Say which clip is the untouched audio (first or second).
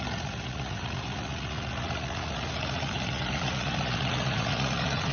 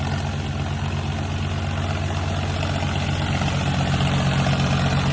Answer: second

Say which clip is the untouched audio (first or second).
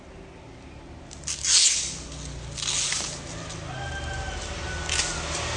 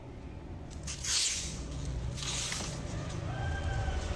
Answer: first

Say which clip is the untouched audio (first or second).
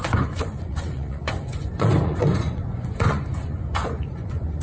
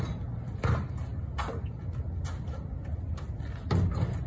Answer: second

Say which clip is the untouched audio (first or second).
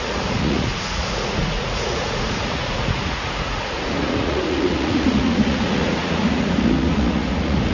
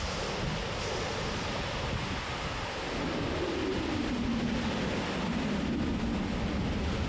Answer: second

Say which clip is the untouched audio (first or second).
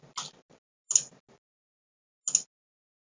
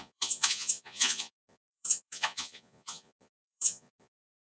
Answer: first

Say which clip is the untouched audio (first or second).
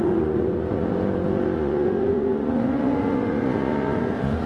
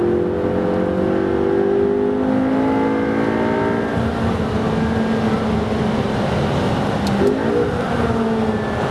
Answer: second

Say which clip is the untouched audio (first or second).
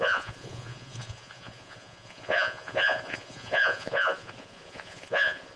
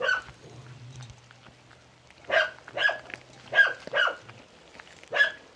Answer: second